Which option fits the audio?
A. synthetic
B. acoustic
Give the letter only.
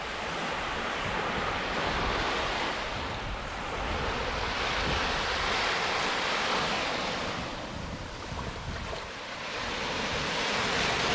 B